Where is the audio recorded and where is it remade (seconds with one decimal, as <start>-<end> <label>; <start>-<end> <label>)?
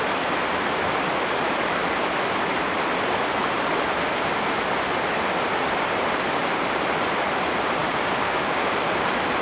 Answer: 0.0-7.8 recorded; 7.8-8.6 remade; 8.6-9.4 recorded